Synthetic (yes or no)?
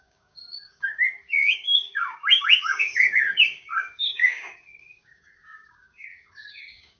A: yes